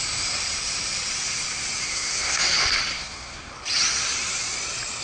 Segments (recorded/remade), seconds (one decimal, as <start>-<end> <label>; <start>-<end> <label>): 0.0-1.8 recorded; 1.8-2.4 remade; 2.4-2.9 recorded; 2.9-3.5 remade; 3.5-5.0 recorded